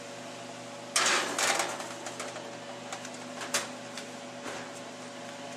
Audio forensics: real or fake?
real